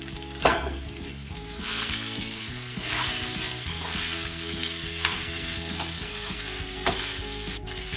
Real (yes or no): no